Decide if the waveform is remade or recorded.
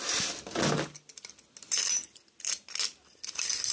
recorded